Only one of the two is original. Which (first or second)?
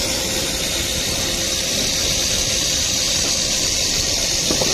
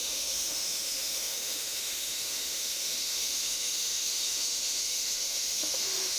first